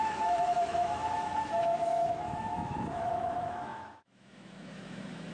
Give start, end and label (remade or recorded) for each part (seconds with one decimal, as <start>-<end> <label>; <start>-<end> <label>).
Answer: 0.0-5.3 remade